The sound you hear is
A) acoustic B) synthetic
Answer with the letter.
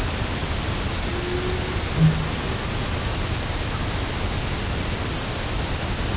A